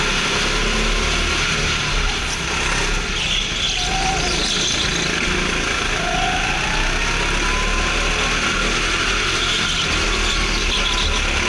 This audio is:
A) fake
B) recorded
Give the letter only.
B